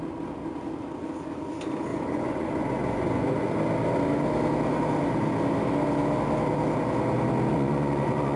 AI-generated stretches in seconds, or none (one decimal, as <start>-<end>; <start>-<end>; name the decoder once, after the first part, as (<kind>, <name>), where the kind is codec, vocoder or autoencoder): 1.9-3.5 (vocoder, Vocos); 7.5-8.4